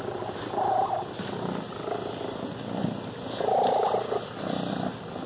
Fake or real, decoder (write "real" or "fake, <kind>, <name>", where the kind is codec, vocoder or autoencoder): real